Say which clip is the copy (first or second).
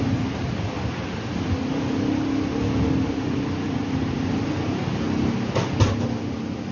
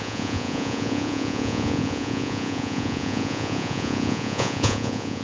second